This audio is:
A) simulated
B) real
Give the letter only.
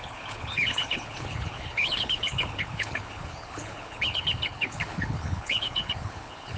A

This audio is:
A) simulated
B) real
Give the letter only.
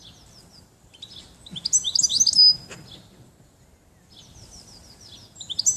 B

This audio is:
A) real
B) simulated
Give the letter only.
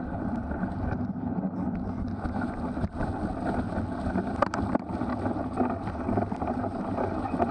A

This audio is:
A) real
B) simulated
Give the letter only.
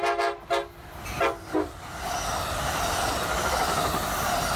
A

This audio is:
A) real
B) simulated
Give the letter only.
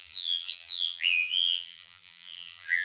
B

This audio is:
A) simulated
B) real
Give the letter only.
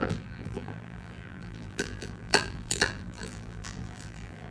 A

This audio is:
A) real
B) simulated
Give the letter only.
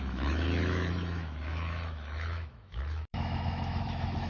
B